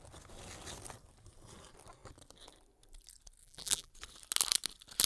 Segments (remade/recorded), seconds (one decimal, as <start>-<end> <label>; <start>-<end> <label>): 0.0-3.4 recorded; 3.4-3.9 remade; 3.9-5.1 recorded